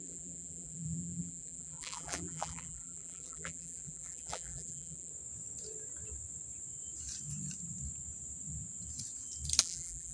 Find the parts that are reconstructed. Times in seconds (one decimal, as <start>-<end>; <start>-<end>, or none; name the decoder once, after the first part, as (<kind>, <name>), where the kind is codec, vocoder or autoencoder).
0.0-5.1 (vocoder, BigVGAN v2); 9.6-10.1